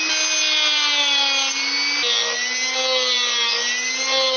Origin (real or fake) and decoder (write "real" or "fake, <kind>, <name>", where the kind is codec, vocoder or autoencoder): real